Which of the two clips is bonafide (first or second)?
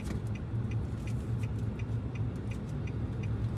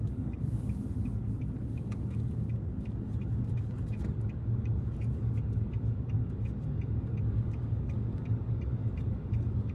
first